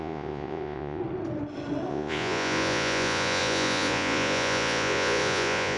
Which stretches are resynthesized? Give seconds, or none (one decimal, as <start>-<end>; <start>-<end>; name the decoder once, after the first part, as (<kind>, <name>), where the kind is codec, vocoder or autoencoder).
0.0-1.0 (vocoder, Vocos); 1.9-5.8